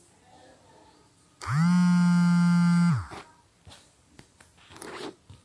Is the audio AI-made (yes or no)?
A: no